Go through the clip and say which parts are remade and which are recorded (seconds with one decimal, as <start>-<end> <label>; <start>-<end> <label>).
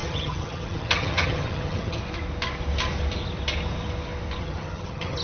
0.0-2.0 remade; 2.0-4.4 recorded; 4.4-5.2 remade